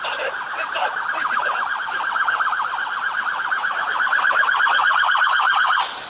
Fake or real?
real